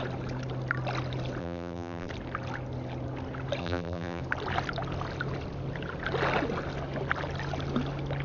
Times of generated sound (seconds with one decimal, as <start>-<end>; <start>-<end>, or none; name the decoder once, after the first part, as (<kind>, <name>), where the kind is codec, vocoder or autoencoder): 1.4-2.1 (vocoder, BigVGAN v2); 3.6-4.2